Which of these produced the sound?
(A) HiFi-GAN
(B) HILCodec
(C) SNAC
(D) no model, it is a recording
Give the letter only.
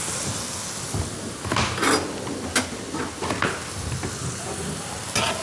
D